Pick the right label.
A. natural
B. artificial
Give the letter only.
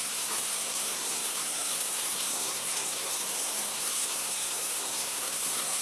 B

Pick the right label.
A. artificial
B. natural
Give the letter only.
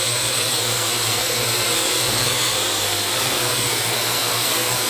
A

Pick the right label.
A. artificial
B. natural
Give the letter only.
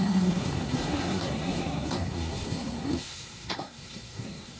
A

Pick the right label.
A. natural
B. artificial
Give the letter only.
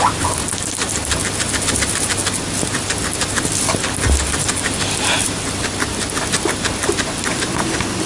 A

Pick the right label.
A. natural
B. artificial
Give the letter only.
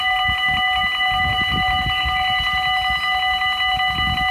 A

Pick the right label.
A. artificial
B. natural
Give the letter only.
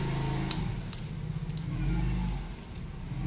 B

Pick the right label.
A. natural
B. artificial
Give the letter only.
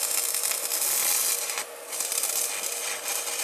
A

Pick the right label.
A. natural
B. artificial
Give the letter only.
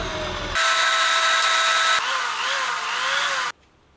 A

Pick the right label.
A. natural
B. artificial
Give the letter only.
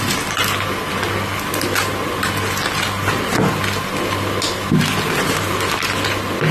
A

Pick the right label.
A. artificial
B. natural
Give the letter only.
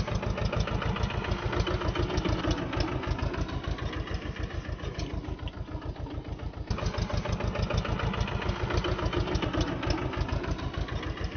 B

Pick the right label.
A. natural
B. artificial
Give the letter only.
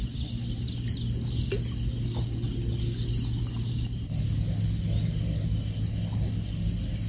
A